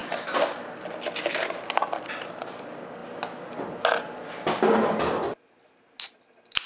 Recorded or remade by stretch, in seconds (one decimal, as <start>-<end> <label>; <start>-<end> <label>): 0.0-6.7 recorded